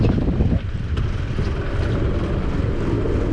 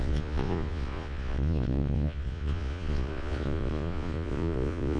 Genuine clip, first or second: first